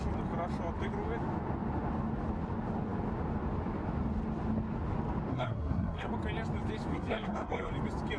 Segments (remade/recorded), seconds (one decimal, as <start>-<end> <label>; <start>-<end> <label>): 0.0-5.3 recorded; 5.3-6.1 remade; 6.1-6.9 recorded; 6.9-7.7 remade; 7.7-8.2 recorded

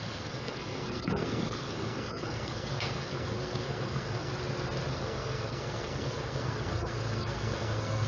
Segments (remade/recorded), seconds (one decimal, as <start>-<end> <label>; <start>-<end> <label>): 0.0-4.3 remade; 4.3-4.9 recorded; 4.9-8.1 remade

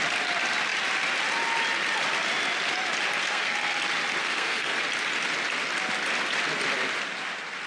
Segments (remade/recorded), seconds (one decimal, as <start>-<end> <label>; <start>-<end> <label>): 0.0-3.2 recorded; 3.2-3.8 remade; 3.8-4.2 recorded; 4.2-4.8 remade; 4.8-7.7 recorded